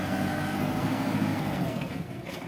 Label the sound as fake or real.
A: fake